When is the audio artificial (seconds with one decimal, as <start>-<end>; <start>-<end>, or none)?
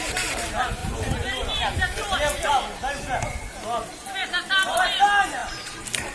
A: 5.4-6.1